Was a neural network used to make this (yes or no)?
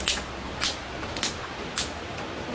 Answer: no